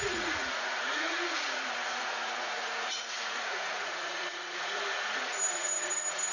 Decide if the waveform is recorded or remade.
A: remade